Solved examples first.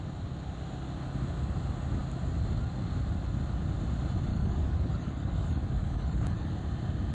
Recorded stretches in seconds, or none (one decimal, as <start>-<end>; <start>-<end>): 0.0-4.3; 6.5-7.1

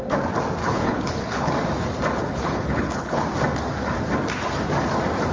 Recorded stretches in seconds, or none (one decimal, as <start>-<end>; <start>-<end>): 0.0-0.6; 1.5-2.2; 3.2-5.3

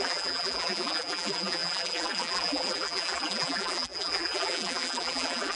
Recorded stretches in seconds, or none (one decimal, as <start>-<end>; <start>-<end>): none

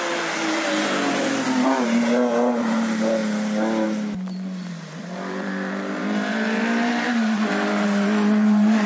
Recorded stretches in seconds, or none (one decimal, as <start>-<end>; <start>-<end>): 3.2-5.0

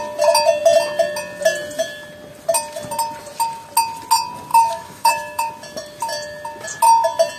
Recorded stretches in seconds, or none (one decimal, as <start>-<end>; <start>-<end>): 0.0-4.5; 5.5-7.4

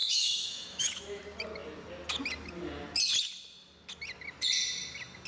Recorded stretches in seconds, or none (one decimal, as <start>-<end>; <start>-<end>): 1.2-5.3

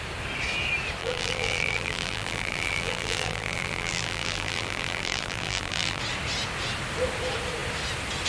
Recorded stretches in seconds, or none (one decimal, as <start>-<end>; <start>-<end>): 0.0-1.0; 6.0-8.3

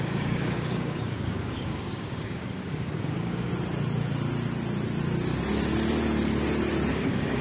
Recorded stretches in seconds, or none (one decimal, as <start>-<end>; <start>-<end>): 3.5-6.9